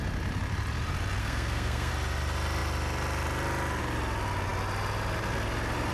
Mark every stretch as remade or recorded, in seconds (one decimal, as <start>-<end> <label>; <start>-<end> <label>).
0.0-1.2 recorded; 1.2-1.9 remade; 1.9-5.9 recorded